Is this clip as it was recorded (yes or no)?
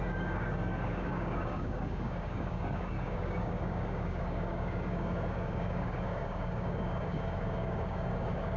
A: no